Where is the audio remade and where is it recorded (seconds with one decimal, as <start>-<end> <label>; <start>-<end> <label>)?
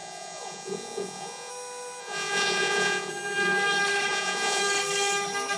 0.0-1.5 remade; 1.5-2.0 recorded; 2.0-3.1 remade; 3.1-4.1 recorded; 4.1-4.6 remade; 4.6-5.6 recorded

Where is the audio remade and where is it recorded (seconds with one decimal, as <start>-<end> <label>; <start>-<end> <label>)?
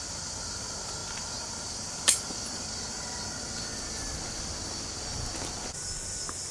0.0-6.5 recorded